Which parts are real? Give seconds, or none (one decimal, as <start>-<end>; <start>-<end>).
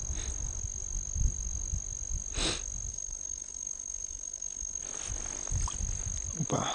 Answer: 0.0-2.9; 4.8-6.7